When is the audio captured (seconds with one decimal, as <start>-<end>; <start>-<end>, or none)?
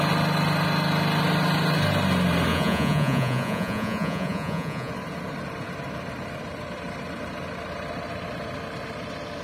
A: 0.0-2.5; 4.9-9.4